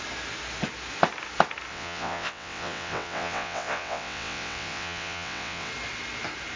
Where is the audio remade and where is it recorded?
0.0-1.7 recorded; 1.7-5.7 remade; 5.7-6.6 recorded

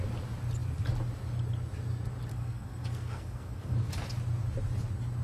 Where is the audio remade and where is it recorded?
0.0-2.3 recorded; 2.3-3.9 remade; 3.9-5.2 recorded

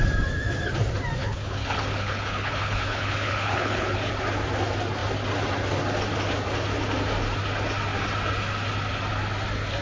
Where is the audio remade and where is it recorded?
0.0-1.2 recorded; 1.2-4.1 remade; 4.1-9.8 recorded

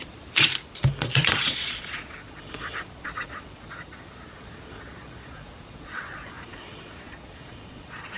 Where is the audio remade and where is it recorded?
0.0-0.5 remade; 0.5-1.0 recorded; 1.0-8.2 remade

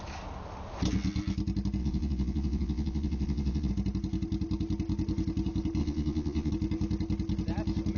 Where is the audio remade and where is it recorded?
0.0-1.8 recorded; 1.8-3.7 remade; 3.7-5.8 recorded; 5.8-6.5 remade; 6.5-8.0 recorded

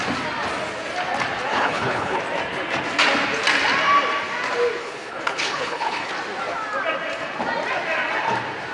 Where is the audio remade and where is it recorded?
0.0-1.5 recorded; 1.5-2.2 remade; 2.2-4.8 recorded; 4.8-6.1 remade; 6.1-8.7 recorded

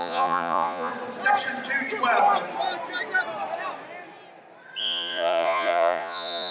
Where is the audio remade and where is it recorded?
0.0-0.9 remade; 0.9-4.8 recorded; 4.8-6.5 remade

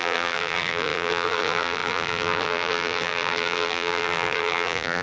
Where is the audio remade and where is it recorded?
0.0-5.0 remade